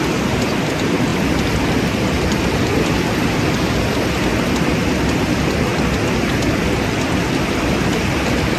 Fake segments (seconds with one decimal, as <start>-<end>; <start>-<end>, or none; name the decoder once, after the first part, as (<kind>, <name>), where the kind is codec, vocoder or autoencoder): none